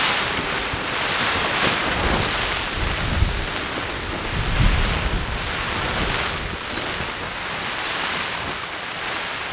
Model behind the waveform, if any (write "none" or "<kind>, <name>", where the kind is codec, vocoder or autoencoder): none